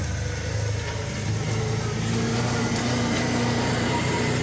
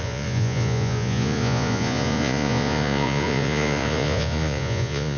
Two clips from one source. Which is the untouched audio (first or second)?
first